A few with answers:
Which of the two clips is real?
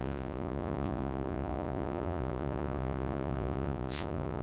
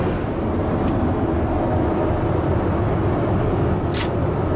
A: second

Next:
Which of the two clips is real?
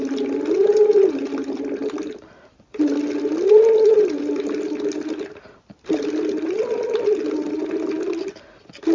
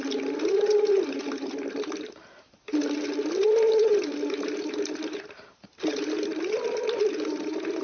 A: first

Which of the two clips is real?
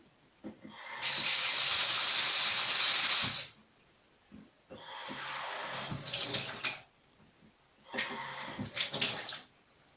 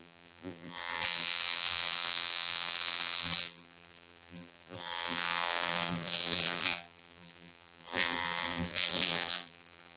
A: first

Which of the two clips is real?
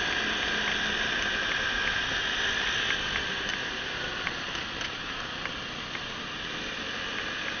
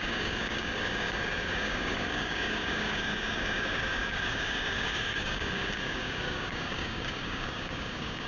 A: first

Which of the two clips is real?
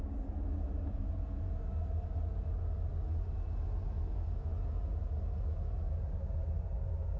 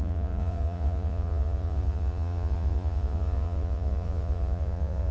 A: first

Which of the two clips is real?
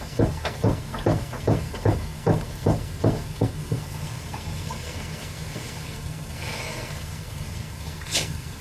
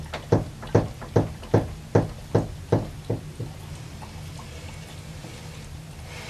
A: second